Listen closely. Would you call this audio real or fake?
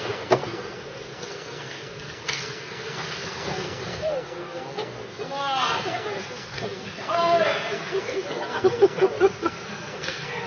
fake